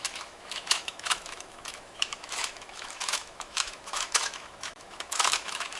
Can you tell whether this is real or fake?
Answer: fake